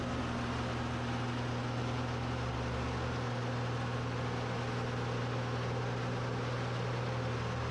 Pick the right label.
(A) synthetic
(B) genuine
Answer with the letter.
B